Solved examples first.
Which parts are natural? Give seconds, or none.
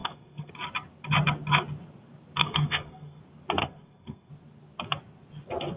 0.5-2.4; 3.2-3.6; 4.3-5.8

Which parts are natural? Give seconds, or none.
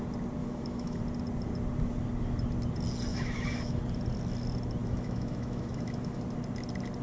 0.0-0.4; 1.0-3.1; 3.8-4.8; 6.2-7.0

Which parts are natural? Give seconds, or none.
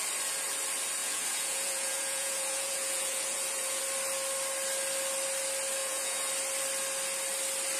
0.0-1.0; 3.8-5.8; 6.3-7.8